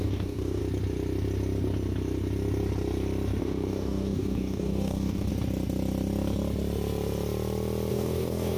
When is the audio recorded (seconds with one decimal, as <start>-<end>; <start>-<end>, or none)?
0.6-3.4; 5.3-7.9